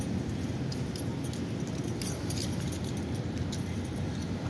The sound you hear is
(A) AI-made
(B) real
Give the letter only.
B